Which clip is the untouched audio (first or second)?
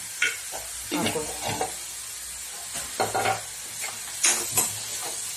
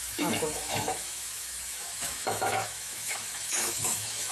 first